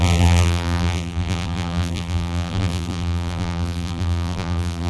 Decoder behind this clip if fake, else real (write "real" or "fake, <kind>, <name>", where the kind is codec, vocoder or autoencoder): fake, vocoder, BigVGAN v2